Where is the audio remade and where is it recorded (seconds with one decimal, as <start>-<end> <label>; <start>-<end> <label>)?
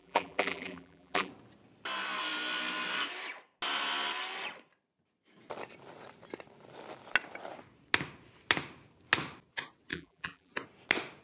0.0-1.3 remade; 1.3-9.9 recorded; 9.9-10.5 remade; 10.5-11.2 recorded